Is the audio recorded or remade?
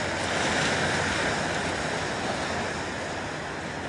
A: recorded